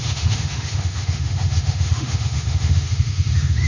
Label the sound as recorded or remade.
remade